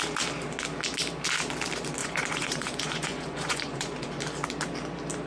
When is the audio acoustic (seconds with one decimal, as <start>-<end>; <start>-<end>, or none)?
0.0-2.0; 4.2-5.3

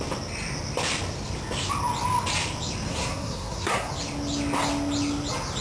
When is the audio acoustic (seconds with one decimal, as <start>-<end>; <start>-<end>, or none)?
0.0-2.9; 3.9-5.6

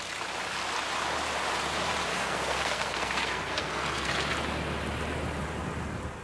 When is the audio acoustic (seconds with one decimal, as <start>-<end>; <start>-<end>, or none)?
0.0-2.1; 4.3-6.2

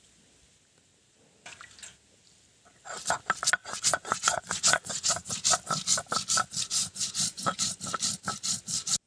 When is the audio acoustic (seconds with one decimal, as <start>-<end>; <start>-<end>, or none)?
0.0-3.6; 5.3-6.8; 7.6-9.1